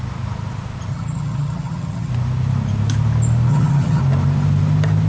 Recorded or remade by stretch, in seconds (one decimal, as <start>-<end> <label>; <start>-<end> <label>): 0.0-0.9 recorded; 0.9-2.1 remade; 2.1-3.5 recorded; 3.5-4.0 remade; 4.0-5.1 recorded